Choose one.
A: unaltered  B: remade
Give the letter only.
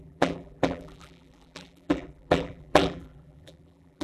B